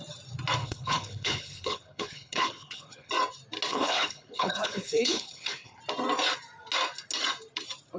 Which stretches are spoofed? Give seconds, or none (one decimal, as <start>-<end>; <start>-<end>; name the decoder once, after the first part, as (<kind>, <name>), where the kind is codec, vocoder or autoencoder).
0.6-3.1 (codec, HILCodec); 3.7-5.8